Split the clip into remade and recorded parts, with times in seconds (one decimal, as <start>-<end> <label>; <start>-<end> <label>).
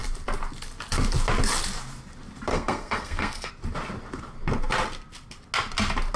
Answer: 0.0-2.5 recorded; 2.5-3.5 remade; 3.5-6.2 recorded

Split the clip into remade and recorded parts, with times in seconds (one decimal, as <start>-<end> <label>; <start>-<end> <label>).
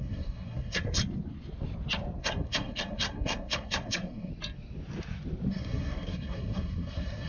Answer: 0.0-1.0 remade; 1.0-2.2 recorded; 2.2-4.3 remade; 4.3-5.5 recorded; 5.5-7.3 remade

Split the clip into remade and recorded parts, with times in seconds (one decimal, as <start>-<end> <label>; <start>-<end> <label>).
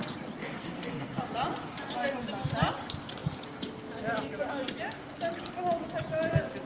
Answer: 0.0-0.4 recorded; 0.4-1.2 remade; 1.2-6.7 recorded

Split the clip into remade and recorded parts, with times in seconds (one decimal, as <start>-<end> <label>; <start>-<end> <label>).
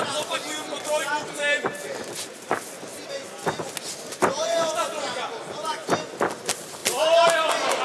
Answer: 0.0-7.8 recorded